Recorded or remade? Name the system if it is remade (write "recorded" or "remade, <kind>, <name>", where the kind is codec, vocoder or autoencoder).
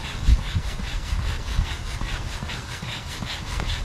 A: remade, codec, SNAC